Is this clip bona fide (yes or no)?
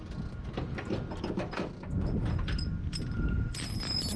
yes